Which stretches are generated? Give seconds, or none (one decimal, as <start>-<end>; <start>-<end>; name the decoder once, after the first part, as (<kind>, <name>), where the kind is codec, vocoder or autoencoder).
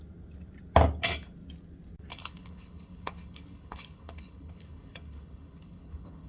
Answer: 2.1-6.3 (codec, HILCodec)